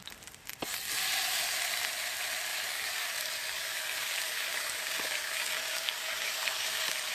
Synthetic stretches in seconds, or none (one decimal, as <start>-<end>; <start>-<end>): 2.5-7.1